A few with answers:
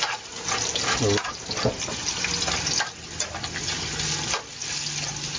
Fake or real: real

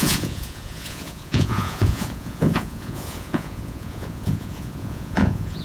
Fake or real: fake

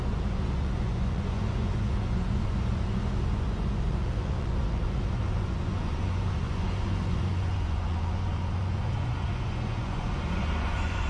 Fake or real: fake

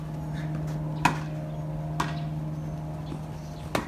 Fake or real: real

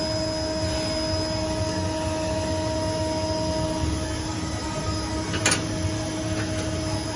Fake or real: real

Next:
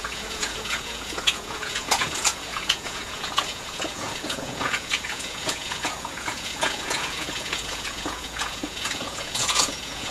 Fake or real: fake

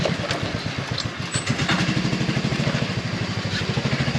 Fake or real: real